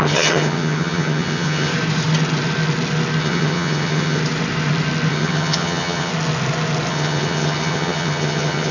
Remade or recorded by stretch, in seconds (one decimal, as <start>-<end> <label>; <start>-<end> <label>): 0.0-1.7 remade; 1.7-3.2 recorded; 3.2-4.2 remade; 4.2-5.1 recorded; 5.1-6.1 remade; 6.1-6.9 recorded; 6.9-8.7 remade